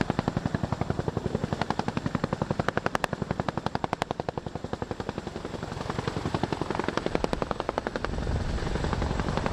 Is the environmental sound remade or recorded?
recorded